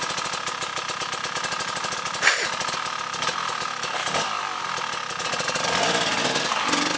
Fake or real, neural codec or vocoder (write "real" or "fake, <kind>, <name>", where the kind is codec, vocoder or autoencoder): real